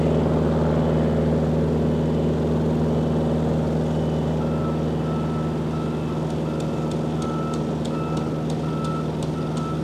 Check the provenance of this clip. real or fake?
real